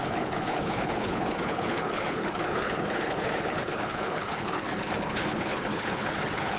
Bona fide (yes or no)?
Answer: no